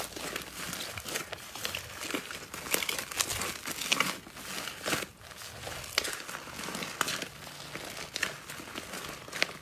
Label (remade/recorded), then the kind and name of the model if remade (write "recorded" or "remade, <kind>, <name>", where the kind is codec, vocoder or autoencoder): recorded